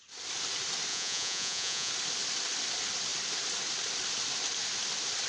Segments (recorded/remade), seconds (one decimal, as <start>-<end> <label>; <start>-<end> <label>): 0.0-0.9 recorded; 0.9-1.9 remade; 1.9-5.3 recorded